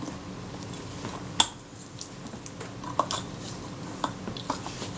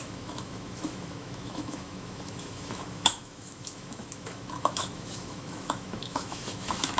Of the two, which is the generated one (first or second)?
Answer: second